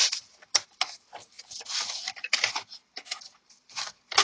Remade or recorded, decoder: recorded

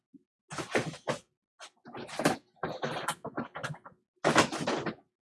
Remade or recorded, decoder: recorded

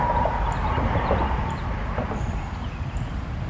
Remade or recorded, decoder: recorded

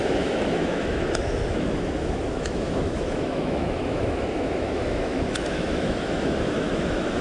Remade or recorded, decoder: remade, autoencoder, DAC-VAE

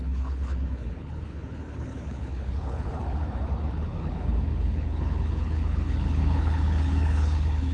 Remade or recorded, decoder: remade, codec, HILCodec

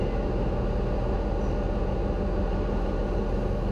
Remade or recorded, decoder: recorded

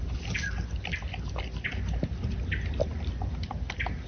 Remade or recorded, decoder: recorded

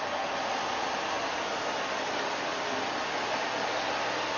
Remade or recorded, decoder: recorded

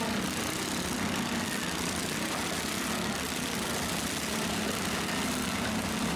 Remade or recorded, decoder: recorded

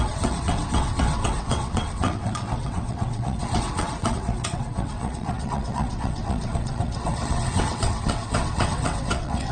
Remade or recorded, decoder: remade, vocoder, WaveNeXt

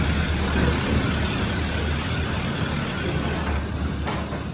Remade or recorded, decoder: recorded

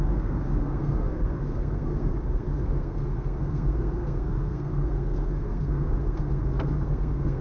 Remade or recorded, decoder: remade, codec, SNAC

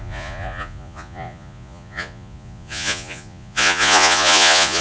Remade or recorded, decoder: remade, vocoder, Vocos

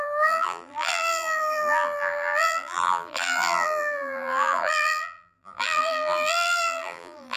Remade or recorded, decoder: remade, vocoder, BigVGAN v2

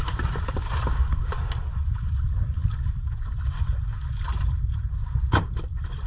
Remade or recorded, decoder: recorded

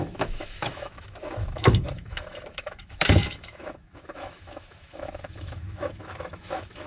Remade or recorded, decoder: remade, autoencoder, DAC-VAE